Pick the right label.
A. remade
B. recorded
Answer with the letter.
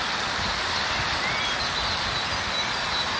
B